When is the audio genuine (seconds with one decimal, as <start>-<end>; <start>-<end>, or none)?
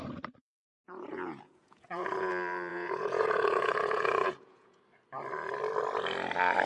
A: 0.0-0.8; 2.3-2.7; 4.8-6.7